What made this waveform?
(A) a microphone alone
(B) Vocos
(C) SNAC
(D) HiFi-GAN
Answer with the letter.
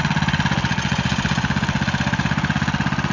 A